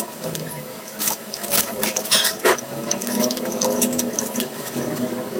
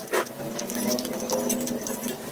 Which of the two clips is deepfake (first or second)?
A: first